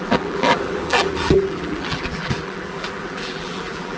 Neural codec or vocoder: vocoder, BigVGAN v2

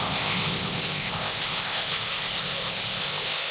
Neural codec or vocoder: codec, ZipCodec